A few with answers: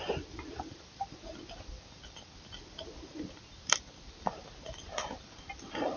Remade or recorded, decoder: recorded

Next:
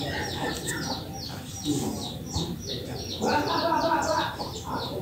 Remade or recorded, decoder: remade, vocoder, BigVGAN v2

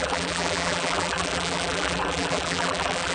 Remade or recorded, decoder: remade, vocoder, BigVGAN v2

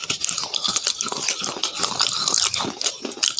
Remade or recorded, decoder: recorded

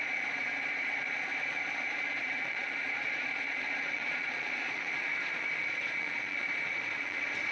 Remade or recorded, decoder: remade, vocoder, Vocos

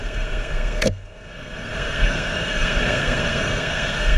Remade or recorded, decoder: remade, codec, SNAC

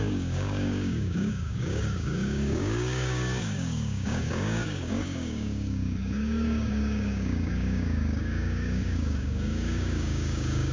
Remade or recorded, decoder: remade, codec, DAC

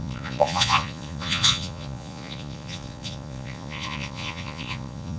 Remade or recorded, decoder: remade, vocoder, Vocos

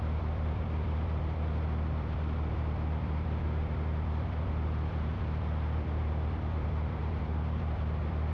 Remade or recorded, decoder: remade, vocoder, BigVGAN v2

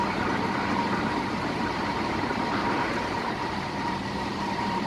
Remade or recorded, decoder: remade, vocoder, BigVGAN v2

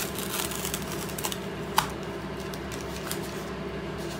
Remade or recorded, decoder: recorded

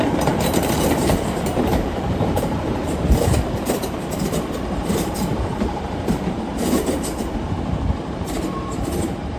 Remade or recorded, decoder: remade, vocoder, BigVGAN v2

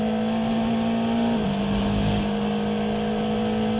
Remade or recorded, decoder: recorded